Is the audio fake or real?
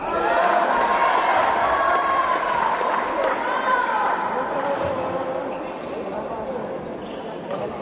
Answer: real